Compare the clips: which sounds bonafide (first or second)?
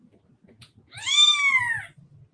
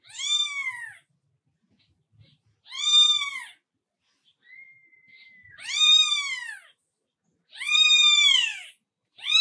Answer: first